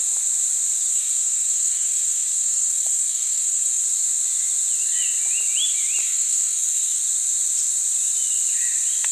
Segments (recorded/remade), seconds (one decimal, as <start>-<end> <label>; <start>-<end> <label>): 0.0-0.9 recorded; 0.9-3.8 remade; 3.8-6.0 recorded; 6.0-7.0 remade; 7.0-9.1 recorded